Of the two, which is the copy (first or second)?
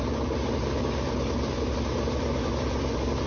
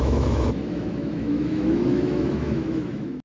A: second